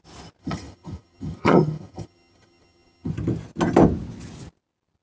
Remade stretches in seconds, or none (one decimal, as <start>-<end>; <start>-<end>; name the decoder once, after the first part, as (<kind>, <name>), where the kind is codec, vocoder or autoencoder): 0.4-3.1 (vocoder, HiFi-GAN)